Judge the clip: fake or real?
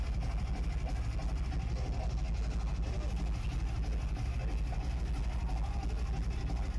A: real